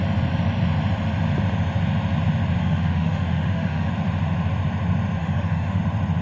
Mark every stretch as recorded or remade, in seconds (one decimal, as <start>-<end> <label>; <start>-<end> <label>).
0.0-2.6 recorded; 2.6-3.9 remade; 3.9-5.2 recorded; 5.2-5.8 remade; 5.8-6.2 recorded